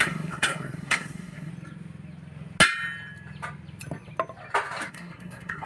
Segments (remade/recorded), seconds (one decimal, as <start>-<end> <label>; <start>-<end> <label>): 0.0-1.5 remade; 1.5-4.9 recorded; 4.9-5.7 remade

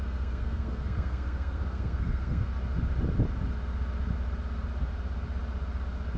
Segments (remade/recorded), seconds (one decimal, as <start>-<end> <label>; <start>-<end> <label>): 0.0-2.5 remade; 2.5-6.2 recorded

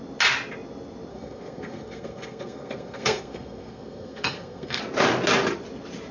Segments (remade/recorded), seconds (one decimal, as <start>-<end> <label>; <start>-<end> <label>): 0.0-1.1 recorded; 1.1-4.8 remade; 4.8-6.1 recorded

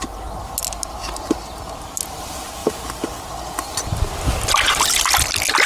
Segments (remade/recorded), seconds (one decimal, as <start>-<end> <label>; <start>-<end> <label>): 0.0-5.7 recorded

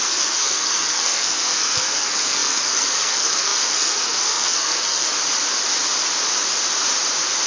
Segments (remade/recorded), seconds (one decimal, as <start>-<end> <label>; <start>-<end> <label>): 0.0-5.1 remade; 5.1-7.5 recorded